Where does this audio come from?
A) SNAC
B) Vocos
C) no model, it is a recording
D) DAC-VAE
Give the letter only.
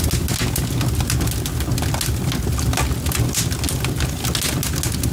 C